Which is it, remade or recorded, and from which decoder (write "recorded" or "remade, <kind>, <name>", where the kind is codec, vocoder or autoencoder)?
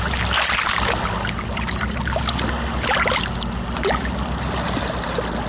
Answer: recorded